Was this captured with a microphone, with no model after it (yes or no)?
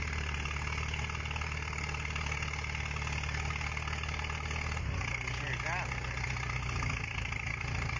yes